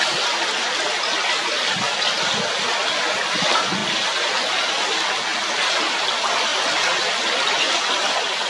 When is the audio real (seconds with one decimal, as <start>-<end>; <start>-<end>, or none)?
0.0-8.5

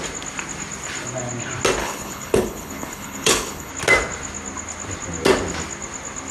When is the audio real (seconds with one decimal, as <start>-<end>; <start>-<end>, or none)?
0.0-1.8; 3.7-6.3

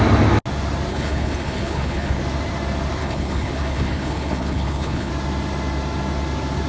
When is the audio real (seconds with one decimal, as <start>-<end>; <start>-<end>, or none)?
0.0-0.9; 2.2-3.0; 5.1-6.7

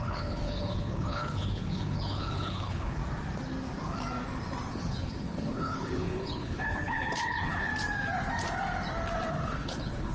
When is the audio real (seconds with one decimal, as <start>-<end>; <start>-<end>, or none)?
3.0-4.7; 7.7-9.3